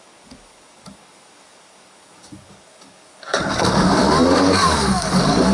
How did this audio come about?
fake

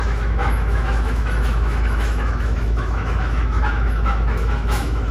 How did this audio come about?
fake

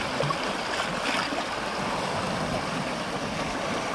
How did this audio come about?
fake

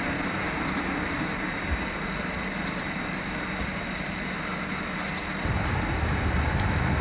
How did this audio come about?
fake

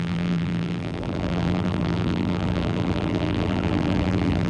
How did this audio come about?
fake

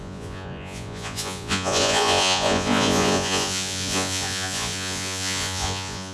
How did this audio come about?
fake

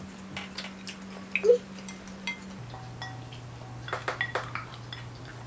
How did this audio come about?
real